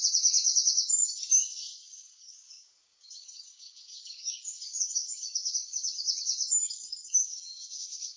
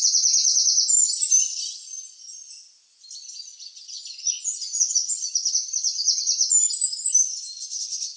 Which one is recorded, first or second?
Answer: second